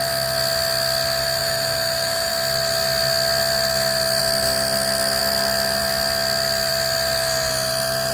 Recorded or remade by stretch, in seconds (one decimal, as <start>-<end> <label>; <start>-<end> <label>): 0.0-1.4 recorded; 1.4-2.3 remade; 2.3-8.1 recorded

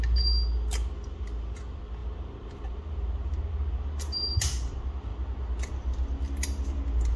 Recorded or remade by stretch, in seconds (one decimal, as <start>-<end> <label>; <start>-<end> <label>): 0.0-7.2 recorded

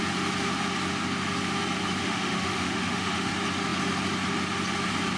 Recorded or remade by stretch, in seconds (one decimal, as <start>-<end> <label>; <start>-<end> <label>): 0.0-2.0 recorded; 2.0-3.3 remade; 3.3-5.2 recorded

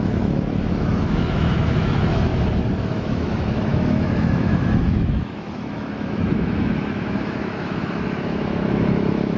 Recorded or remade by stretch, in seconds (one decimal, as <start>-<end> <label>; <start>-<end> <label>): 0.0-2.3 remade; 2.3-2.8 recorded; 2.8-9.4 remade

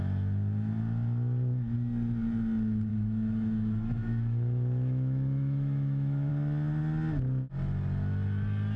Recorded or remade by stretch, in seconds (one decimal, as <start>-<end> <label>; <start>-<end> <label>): 0.0-2.9 recorded; 2.9-6.3 remade; 6.3-8.8 recorded

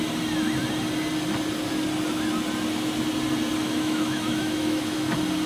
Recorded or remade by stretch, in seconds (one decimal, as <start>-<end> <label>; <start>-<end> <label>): 0.0-3.6 recorded; 3.6-5.1 remade; 5.1-5.5 recorded

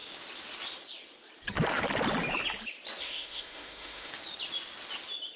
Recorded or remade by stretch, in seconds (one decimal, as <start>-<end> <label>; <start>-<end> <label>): 0.0-3.0 recorded; 3.0-4.1 remade; 4.1-5.4 recorded

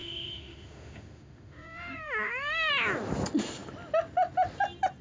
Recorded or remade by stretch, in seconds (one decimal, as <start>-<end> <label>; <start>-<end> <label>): 0.0-2.7 remade; 2.7-5.0 recorded